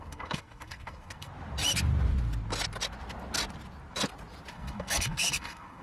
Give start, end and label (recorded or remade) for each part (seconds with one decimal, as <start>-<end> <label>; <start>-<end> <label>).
0.0-1.3 remade; 1.3-4.5 recorded; 4.5-5.8 remade